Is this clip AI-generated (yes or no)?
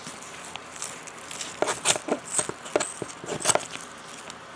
no